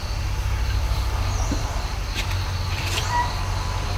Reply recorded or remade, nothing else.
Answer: remade